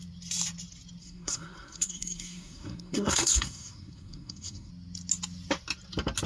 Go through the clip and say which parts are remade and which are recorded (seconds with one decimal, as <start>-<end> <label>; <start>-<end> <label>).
0.0-1.0 recorded; 1.0-4.7 remade; 4.7-6.3 recorded